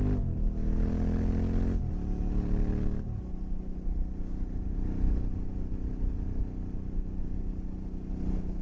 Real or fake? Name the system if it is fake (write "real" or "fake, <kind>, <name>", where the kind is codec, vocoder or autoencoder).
real